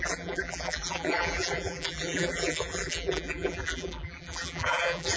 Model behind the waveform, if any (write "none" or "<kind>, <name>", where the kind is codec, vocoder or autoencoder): vocoder, BigVGAN v2